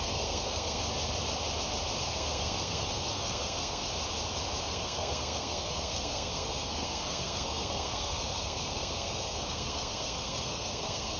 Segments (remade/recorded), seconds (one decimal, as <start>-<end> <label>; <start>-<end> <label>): 0.0-0.8 remade; 0.8-2.0 recorded; 2.0-3.8 remade; 3.8-4.6 recorded; 4.6-11.2 remade

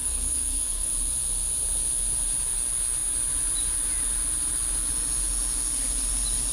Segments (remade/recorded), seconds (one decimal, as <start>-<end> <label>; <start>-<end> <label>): 0.0-0.9 remade; 0.9-6.5 recorded

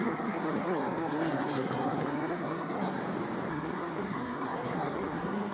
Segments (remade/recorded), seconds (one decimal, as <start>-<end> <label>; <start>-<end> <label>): 0.0-3.0 remade; 3.0-3.5 recorded; 3.5-5.5 remade

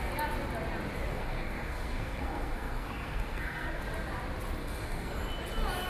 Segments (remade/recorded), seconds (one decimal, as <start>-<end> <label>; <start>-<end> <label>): 0.0-1.1 recorded; 1.1-3.8 remade; 3.8-4.6 recorded; 4.6-5.3 remade; 5.3-5.9 recorded